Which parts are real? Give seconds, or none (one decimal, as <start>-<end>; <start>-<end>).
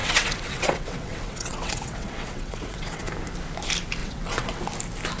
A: 3.1-4.0; 4.6-5.2